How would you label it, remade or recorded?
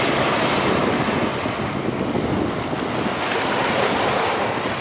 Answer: recorded